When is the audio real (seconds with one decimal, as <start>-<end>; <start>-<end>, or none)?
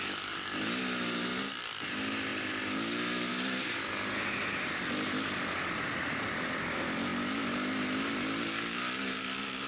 0.0-9.7